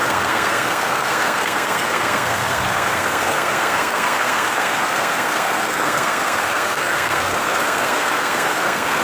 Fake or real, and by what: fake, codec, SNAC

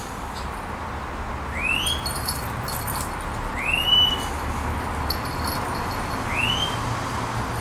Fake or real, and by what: real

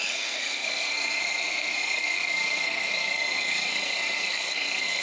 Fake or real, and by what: fake, codec, SNAC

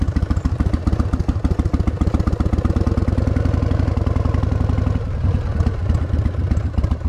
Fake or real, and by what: real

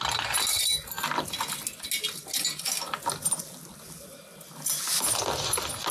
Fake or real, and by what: real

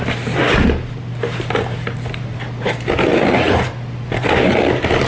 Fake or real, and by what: real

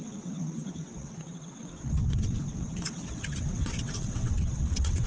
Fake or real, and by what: fake, vocoder, WaveNeXt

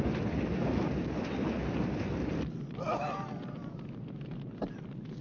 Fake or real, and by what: real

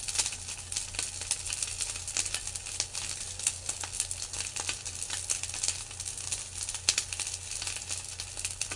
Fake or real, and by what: real